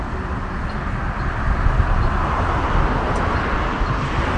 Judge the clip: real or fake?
real